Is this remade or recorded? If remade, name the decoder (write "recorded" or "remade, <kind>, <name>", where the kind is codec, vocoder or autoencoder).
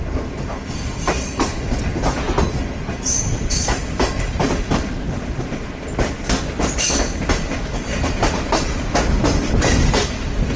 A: recorded